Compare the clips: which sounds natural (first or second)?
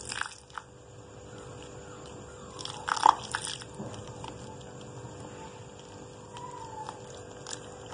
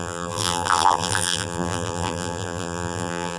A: first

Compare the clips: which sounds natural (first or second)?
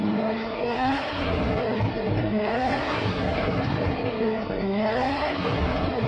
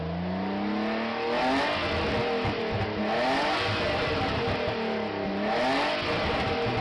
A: second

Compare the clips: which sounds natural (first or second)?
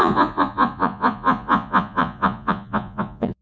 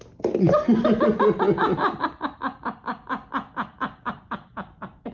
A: second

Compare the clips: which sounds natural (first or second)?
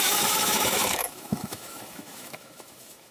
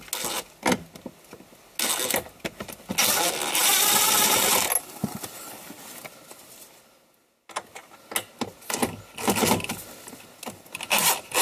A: second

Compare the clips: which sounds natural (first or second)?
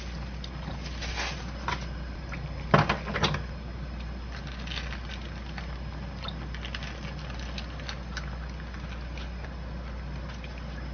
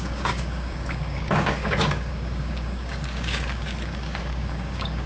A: first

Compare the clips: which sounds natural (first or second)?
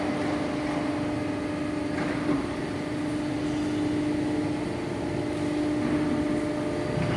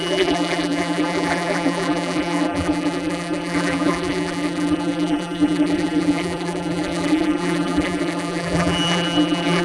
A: first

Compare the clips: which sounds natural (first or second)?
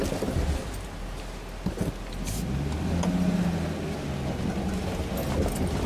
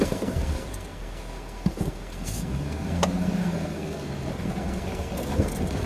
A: first